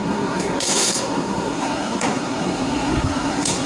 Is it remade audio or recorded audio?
remade